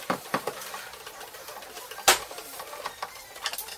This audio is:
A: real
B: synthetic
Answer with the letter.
A